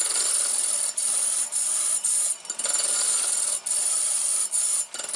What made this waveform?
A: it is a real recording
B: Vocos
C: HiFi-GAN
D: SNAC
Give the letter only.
A